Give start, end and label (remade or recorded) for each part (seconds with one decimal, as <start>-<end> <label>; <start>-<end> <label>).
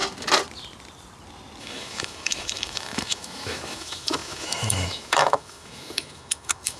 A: 0.0-1.6 recorded; 1.6-6.8 remade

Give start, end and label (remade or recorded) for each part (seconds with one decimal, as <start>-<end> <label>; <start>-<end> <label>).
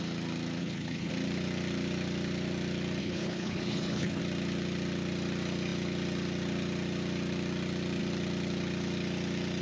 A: 0.0-0.6 recorded; 0.6-1.1 remade; 1.1-3.0 recorded; 3.0-4.2 remade; 4.2-9.6 recorded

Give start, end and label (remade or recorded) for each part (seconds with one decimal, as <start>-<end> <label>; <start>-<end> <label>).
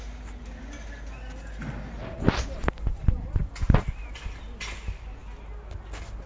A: 0.0-6.3 recorded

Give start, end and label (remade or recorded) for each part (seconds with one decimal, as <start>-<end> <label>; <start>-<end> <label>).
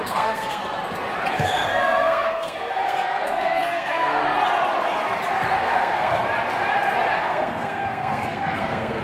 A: 0.0-0.6 remade; 0.6-1.3 recorded; 1.3-4.2 remade; 4.2-5.6 recorded; 5.6-6.2 remade; 6.2-7.2 recorded; 7.2-9.0 remade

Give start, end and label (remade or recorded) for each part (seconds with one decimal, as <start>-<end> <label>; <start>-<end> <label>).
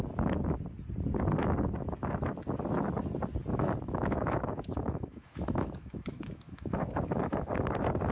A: 0.0-3.5 recorded; 3.5-7.5 remade; 7.5-8.1 recorded